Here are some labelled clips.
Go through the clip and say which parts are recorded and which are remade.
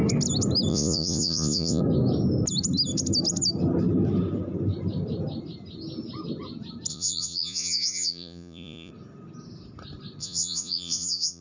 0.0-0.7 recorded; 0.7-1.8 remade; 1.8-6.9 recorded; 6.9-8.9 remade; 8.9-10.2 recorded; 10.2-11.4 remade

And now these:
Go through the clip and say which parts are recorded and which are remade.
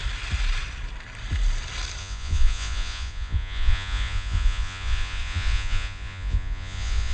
0.0-2.0 recorded; 2.0-7.1 remade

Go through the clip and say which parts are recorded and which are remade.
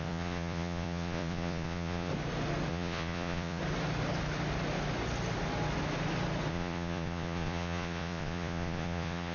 0.0-2.1 remade; 2.1-2.7 recorded; 2.7-3.6 remade; 3.6-6.5 recorded; 6.5-9.3 remade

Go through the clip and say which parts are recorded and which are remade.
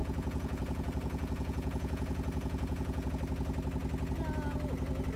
0.0-3.1 remade; 3.1-5.2 recorded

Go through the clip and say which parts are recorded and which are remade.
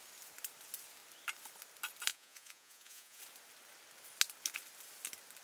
0.0-2.1 recorded; 2.1-3.2 remade; 3.2-5.4 recorded